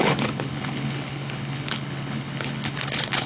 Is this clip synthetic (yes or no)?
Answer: yes